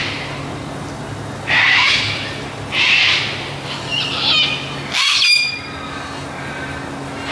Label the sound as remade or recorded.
recorded